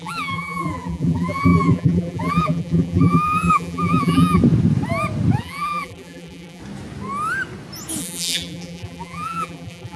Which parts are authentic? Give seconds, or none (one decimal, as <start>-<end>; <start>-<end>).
4.4-5.4; 6.6-8.0